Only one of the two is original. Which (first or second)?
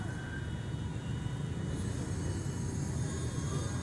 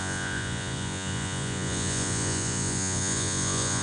first